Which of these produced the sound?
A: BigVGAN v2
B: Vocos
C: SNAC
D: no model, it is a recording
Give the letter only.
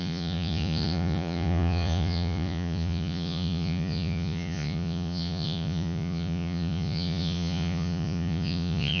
B